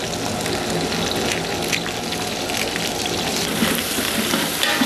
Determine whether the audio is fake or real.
real